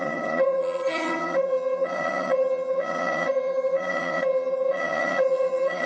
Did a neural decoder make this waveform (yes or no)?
yes